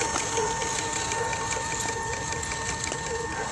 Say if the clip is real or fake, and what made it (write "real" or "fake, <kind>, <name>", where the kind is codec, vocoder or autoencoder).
real